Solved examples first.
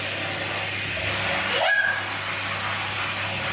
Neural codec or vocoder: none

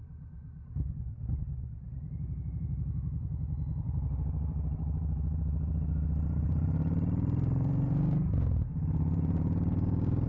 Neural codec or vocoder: vocoder, BigVGAN v2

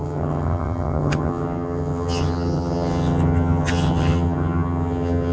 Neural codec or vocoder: vocoder, HiFi-GAN